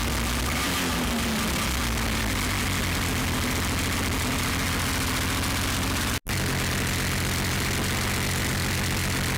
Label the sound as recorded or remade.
recorded